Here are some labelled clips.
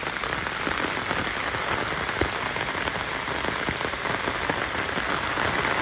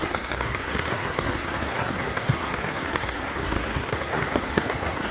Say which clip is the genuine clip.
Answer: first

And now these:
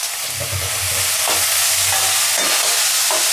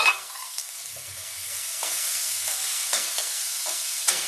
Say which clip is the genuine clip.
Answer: first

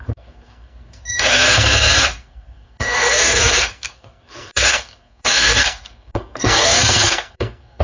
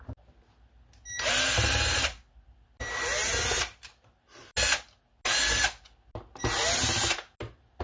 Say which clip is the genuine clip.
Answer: second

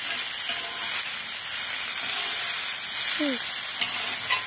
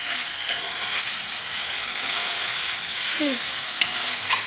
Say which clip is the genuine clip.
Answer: first